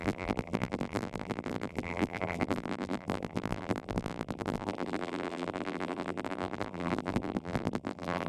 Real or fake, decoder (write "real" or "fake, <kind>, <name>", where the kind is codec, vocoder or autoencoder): fake, vocoder, BigVGAN v2